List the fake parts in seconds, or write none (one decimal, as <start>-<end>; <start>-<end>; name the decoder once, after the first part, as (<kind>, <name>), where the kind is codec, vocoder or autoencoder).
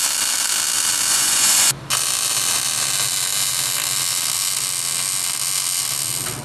1.1-1.8 (vocoder, Vocos)